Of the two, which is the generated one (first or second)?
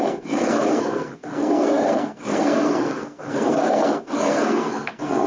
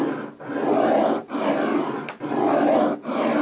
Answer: first